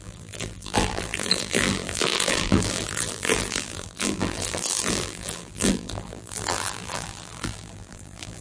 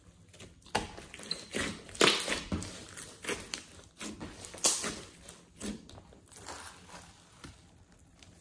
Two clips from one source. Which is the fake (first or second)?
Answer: first